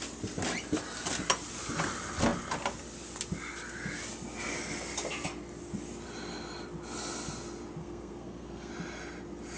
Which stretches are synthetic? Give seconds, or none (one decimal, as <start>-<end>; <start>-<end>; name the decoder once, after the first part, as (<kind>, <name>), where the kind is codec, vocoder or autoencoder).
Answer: 7.8-8.7 (codec, SNAC)